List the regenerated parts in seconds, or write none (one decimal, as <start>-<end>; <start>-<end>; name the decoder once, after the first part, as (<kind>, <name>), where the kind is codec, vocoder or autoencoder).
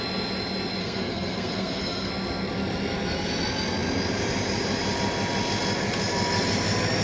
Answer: 0.8-2.1 (codec, SNAC)